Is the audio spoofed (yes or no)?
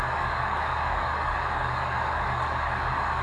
yes